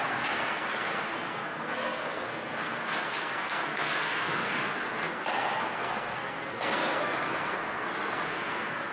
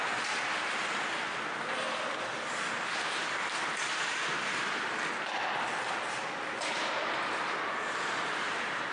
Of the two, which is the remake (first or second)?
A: first